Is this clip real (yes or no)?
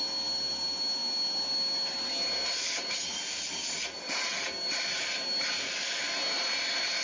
yes